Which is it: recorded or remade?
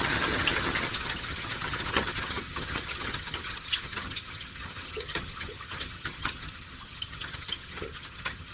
remade